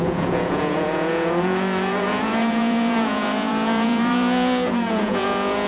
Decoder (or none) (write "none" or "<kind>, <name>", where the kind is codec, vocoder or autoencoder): vocoder, Vocos